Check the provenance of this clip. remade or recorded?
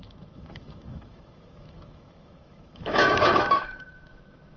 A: remade